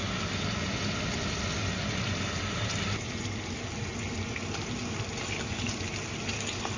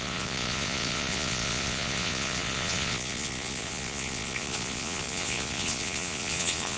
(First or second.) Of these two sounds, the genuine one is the first